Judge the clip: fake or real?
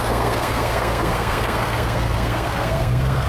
fake